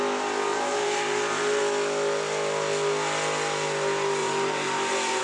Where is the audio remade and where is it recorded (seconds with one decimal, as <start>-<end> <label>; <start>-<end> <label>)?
0.0-0.5 recorded; 0.5-1.6 remade; 1.6-4.2 recorded; 4.2-5.2 remade